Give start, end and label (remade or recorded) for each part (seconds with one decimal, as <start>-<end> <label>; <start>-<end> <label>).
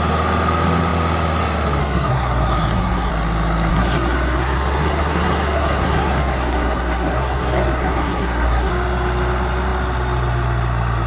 0.0-1.8 recorded; 1.8-3.1 remade; 3.1-3.7 recorded; 3.7-8.7 remade; 8.7-11.1 recorded